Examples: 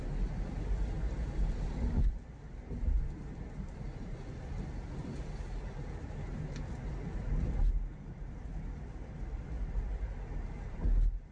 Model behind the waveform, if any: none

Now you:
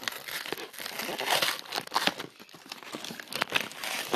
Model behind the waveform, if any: none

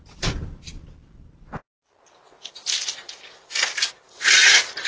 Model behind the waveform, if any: none